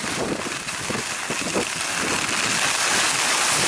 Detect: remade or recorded recorded